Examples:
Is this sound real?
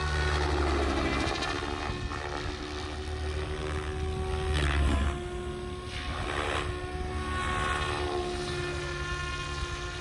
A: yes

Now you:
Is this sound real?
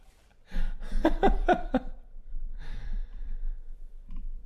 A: no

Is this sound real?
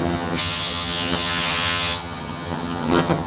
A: no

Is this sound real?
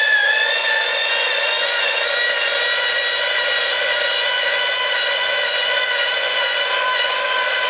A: no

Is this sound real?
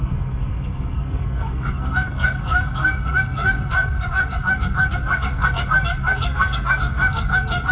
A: no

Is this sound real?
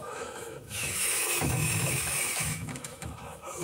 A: no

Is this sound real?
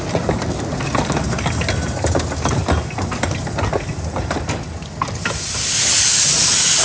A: yes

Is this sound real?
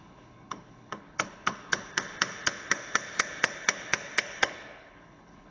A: no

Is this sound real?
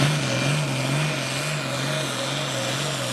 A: yes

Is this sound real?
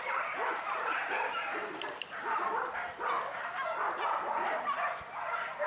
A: yes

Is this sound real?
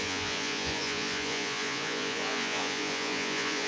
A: no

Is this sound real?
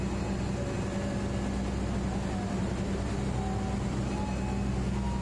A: yes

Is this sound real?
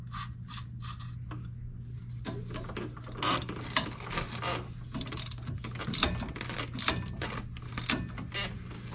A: yes